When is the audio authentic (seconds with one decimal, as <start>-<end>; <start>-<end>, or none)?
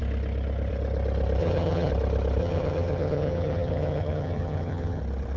0.0-1.4; 1.9-2.4; 5.0-5.4